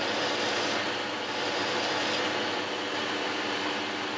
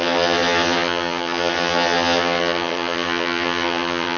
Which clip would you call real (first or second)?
first